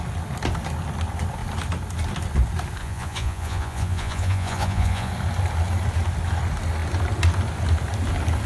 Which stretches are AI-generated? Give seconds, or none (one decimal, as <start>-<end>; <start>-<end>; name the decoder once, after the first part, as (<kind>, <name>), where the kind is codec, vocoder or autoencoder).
2.8-5.1 (vocoder, Vocos)

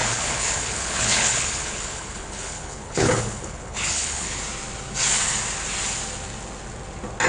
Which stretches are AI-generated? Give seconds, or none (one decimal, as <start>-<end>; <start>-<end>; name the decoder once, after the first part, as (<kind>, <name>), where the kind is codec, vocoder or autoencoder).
0.0-4.4 (codec, HILCodec)

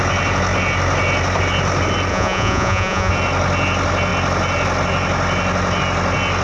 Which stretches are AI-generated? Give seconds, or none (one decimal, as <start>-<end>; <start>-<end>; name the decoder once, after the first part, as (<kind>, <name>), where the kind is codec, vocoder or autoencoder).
2.1-3.1 (vocoder, Vocos)

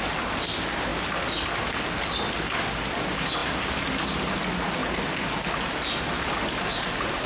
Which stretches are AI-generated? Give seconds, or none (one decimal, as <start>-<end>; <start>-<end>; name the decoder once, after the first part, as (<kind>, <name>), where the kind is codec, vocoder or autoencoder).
none

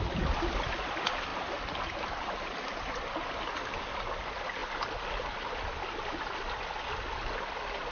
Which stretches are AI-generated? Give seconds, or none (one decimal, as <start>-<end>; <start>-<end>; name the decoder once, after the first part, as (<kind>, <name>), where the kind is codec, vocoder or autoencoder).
none